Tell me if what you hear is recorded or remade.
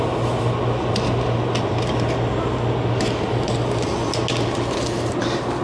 recorded